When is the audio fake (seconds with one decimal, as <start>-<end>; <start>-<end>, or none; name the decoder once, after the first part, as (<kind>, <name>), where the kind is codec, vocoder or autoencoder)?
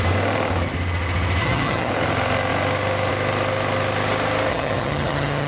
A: 1.4-1.9 (vocoder, HiFi-GAN); 4.5-5.5